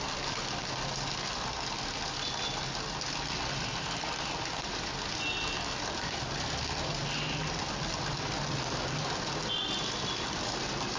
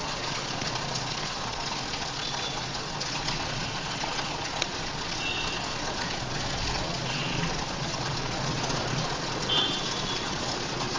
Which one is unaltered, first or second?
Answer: first